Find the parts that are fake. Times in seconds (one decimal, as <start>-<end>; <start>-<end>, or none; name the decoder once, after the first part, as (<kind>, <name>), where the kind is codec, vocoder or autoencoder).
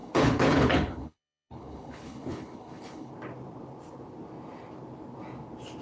0.0-3.1 (codec, HILCodec)